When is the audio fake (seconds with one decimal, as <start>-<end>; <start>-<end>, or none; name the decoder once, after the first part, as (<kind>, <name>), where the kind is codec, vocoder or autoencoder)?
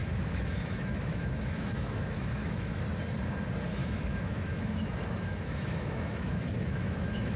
0.0-2.8 (autoencoder, DAC-VAE); 3.8-7.4